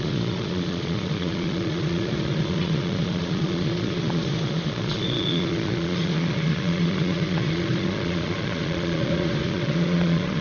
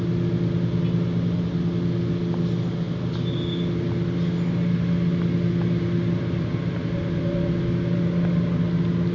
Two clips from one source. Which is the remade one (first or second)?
first